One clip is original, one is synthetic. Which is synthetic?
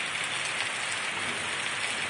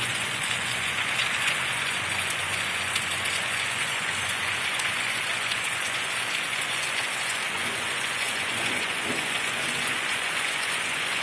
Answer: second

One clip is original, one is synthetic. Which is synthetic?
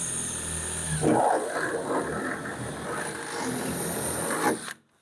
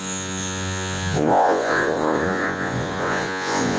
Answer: second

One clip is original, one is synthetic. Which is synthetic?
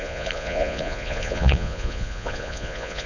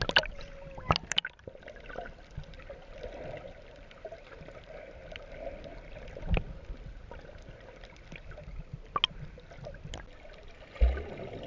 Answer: first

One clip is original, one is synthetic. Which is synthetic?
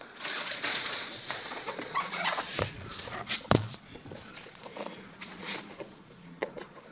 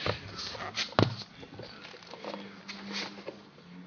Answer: first